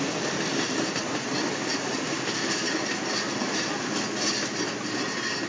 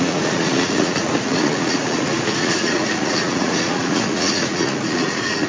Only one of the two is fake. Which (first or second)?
second